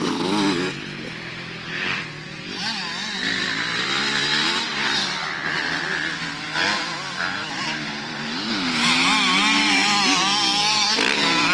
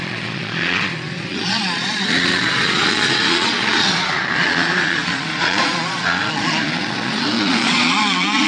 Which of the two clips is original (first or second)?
first